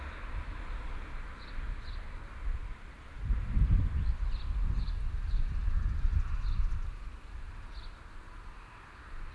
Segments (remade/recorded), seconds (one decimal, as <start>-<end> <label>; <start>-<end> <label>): 0.0-9.3 recorded